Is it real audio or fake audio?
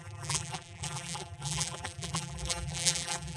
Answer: fake